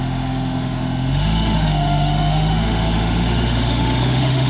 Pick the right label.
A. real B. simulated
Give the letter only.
B